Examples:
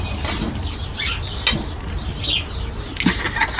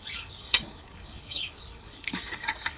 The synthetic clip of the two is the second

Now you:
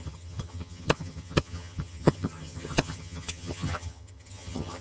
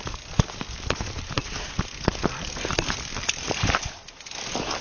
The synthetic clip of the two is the first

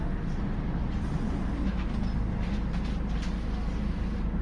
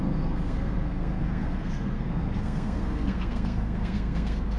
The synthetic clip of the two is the second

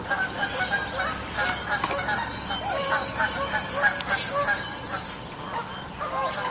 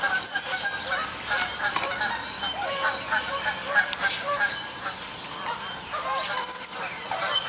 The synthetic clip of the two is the second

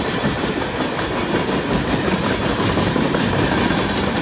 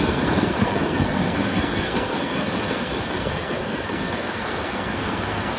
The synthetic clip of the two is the second